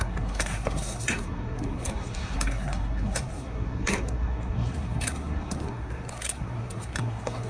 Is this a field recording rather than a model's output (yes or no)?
no